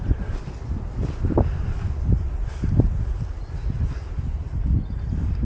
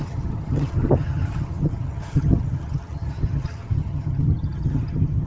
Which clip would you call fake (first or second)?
second